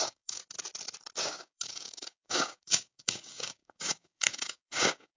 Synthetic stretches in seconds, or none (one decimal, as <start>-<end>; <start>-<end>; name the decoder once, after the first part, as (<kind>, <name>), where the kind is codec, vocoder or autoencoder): 0.0-0.4 (codec, DAC); 1.2-5.2